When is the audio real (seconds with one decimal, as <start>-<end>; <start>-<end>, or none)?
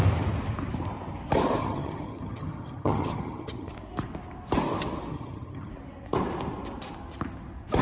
0.0-1.6; 3.7-5.1; 5.7-7.8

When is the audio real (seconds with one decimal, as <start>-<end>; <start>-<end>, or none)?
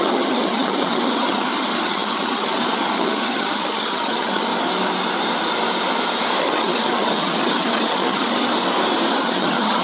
4.5-6.4; 8.5-9.2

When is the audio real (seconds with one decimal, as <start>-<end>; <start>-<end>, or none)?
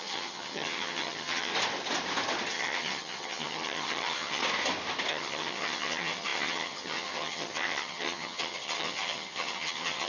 1.5-2.5; 4.4-5.1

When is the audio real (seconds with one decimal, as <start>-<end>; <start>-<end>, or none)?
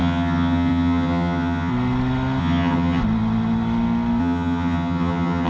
1.7-2.4; 3.0-4.2